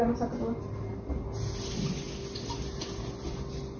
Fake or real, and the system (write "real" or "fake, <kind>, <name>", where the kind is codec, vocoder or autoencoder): real